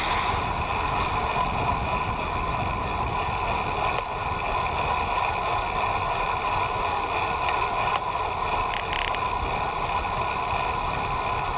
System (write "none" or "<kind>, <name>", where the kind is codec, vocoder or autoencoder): none